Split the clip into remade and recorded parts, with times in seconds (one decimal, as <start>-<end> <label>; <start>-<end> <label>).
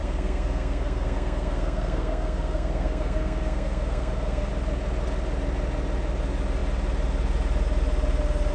0.0-4.5 remade; 4.5-8.5 recorded